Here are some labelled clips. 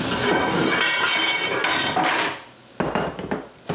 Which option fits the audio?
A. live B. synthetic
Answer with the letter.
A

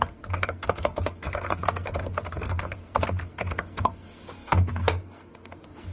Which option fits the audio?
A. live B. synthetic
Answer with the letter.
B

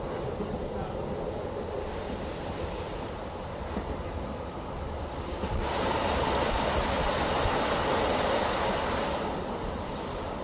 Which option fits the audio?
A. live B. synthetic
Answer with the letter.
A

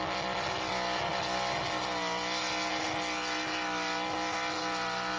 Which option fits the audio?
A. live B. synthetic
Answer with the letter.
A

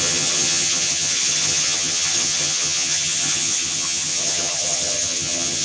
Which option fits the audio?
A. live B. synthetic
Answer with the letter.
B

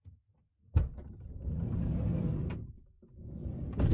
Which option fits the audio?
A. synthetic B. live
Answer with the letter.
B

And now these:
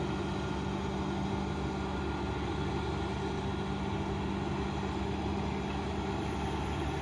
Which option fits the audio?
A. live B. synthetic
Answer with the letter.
A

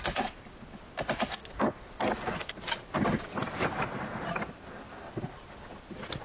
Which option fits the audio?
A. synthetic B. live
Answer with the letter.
B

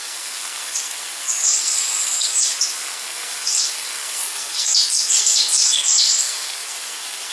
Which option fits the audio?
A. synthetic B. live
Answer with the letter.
A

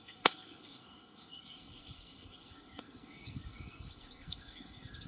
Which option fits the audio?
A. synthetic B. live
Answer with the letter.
A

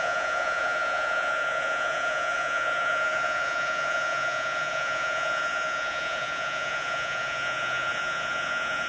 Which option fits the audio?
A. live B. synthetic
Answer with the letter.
B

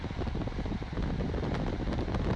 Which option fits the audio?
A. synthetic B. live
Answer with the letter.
B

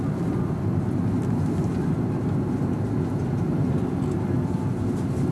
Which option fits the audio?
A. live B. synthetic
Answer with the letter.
A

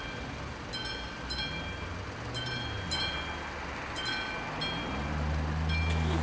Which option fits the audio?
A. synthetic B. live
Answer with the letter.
B